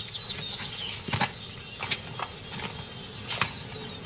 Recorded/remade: recorded